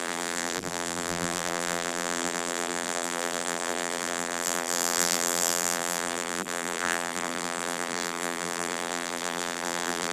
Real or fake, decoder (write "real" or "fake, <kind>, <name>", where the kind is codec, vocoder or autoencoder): fake, vocoder, BigVGAN v2